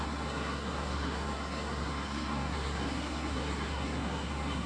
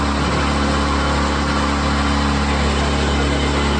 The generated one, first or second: first